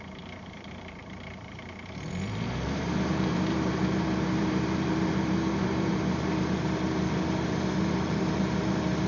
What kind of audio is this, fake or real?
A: fake